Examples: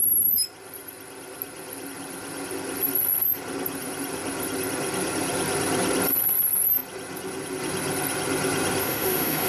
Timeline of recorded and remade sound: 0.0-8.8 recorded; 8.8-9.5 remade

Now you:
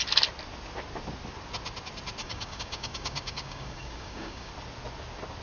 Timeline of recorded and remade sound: 0.0-2.2 recorded; 2.2-4.5 remade; 4.5-5.4 recorded

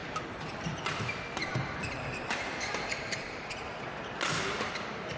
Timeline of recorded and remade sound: 0.0-0.8 remade; 0.8-1.4 recorded; 1.4-3.8 remade; 3.8-5.2 recorded